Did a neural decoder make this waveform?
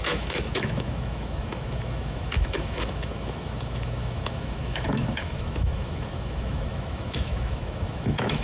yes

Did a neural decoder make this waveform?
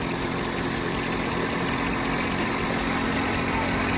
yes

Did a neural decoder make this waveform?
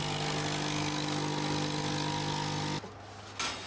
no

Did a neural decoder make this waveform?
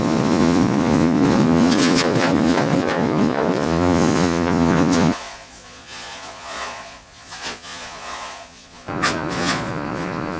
yes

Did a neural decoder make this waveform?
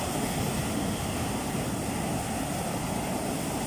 no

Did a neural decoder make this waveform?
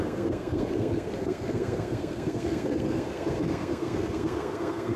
yes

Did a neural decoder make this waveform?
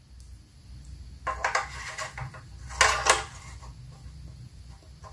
no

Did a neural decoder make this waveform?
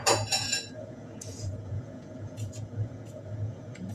yes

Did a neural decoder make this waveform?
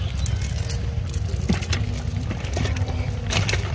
no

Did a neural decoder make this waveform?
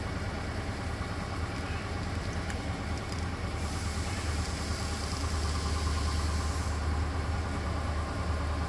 no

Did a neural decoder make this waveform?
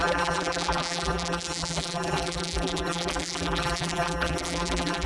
yes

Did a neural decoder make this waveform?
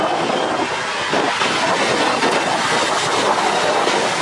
no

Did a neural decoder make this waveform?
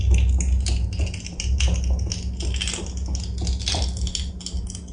no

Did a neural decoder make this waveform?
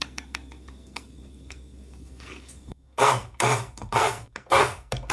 yes